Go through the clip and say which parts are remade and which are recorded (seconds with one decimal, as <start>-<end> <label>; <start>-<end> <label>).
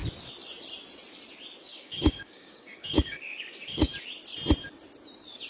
0.0-1.7 recorded; 1.7-3.9 remade; 3.9-5.5 recorded